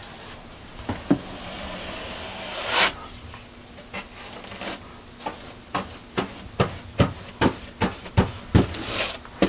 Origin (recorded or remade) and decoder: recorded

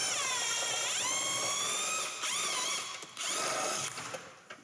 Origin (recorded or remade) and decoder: recorded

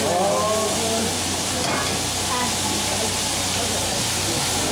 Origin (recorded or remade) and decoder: recorded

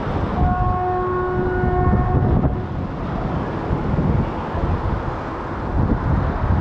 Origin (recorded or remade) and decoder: recorded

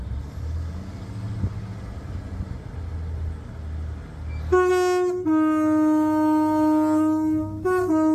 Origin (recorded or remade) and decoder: recorded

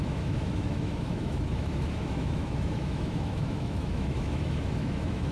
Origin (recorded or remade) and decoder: remade, autoencoder, DAC-VAE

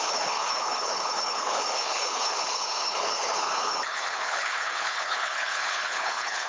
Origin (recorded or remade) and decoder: remade, codec, HILCodec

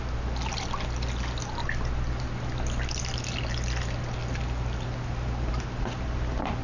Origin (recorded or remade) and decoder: recorded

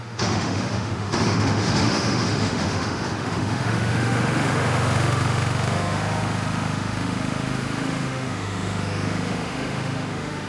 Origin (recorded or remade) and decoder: remade, autoencoder, DAC-VAE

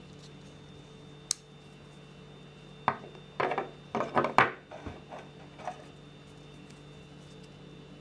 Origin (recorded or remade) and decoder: recorded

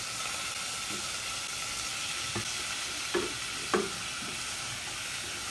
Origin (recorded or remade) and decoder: recorded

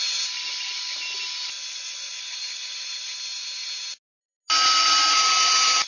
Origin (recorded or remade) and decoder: recorded